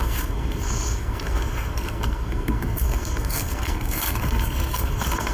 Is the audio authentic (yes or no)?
no